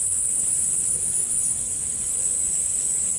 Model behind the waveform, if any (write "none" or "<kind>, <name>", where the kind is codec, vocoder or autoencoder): codec, HILCodec